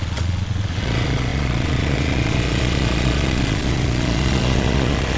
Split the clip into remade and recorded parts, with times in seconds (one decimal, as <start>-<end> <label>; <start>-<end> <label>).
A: 0.0-5.2 remade